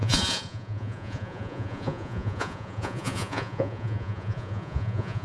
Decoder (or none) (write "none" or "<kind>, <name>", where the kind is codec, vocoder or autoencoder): vocoder, Vocos